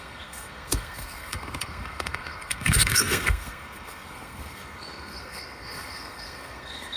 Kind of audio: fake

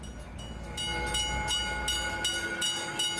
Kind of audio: real